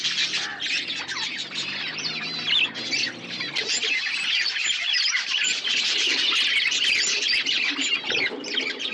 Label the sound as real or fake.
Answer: real